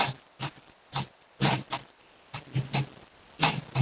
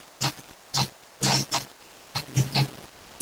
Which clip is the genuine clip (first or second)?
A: second